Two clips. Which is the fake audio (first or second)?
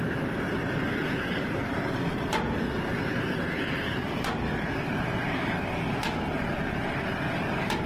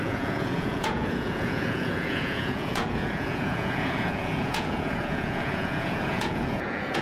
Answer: second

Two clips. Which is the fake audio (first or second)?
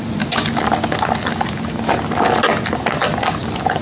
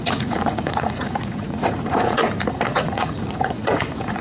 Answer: second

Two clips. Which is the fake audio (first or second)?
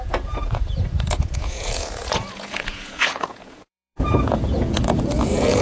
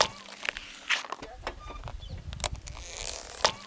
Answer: first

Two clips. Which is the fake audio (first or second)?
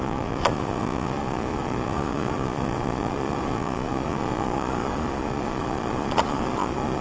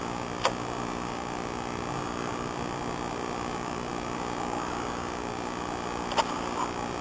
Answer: first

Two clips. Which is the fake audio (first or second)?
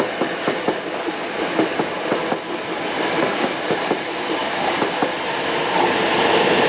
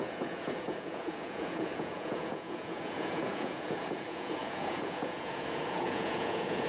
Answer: second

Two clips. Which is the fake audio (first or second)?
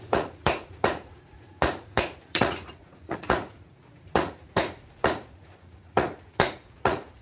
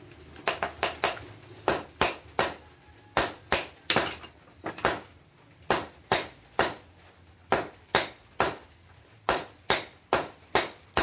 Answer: first